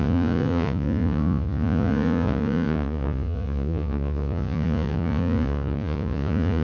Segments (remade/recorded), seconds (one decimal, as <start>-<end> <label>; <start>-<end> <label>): 0.0-6.6 remade